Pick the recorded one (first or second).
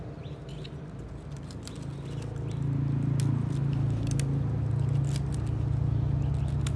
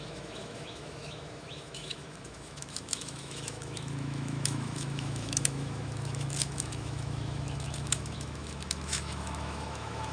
first